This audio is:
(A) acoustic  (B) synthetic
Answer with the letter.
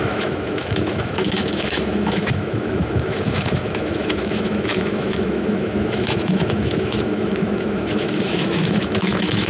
B